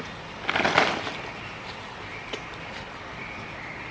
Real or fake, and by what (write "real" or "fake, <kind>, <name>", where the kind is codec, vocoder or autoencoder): real